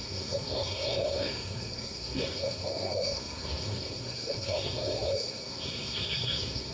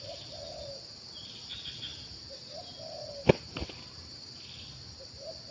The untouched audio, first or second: second